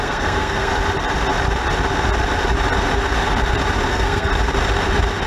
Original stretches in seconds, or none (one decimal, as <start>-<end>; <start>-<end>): 0.7-3.9; 4.3-5.3